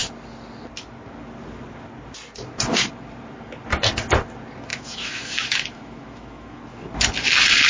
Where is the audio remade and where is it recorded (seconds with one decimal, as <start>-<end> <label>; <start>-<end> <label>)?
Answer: 0.0-4.7 recorded; 4.7-6.6 remade; 6.6-7.7 recorded